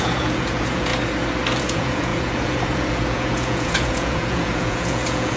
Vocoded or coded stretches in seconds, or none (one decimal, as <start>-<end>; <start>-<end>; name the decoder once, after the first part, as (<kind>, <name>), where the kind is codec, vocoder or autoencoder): 0.0-0.9 (vocoder, Vocos); 1.6-5.4

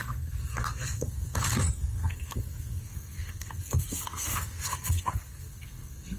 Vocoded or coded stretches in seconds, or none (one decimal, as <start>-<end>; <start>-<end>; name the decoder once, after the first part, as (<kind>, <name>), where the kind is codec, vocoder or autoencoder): 0.0-6.2 (codec, SNAC)

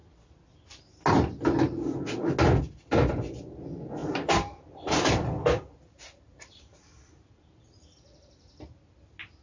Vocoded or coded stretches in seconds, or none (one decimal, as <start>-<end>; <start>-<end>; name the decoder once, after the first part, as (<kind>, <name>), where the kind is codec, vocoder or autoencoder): 4.0-8.7 (vocoder, BigVGAN v2)